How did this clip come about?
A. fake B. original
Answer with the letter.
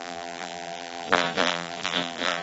A